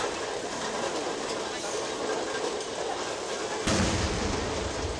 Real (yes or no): yes